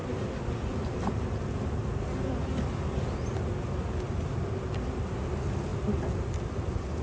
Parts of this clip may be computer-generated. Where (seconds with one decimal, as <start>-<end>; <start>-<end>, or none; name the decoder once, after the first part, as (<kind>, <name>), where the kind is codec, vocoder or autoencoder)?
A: none